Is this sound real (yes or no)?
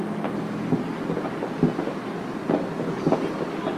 yes